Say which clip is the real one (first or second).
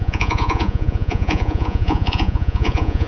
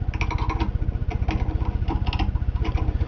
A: second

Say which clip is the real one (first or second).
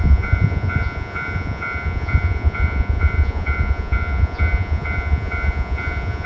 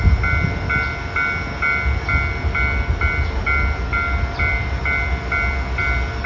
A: second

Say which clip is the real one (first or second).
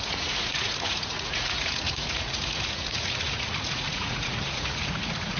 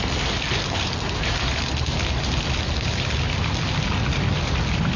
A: second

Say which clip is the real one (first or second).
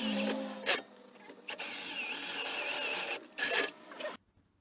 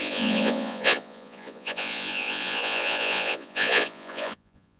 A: first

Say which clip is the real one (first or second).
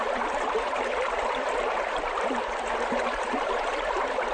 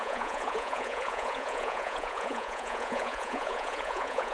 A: first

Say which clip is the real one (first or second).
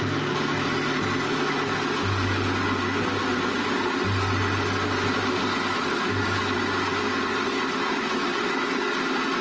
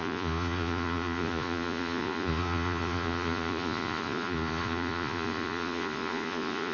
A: first